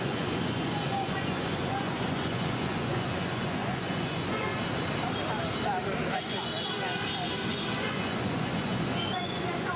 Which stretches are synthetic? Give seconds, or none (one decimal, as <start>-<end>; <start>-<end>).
0.0-4.5; 6.1-6.5; 7.5-9.8